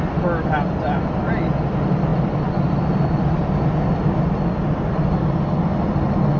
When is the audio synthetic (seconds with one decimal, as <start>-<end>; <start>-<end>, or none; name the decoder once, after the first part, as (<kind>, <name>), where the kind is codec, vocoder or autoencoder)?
none